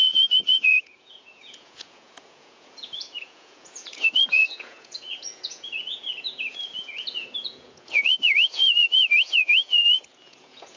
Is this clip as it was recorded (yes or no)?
no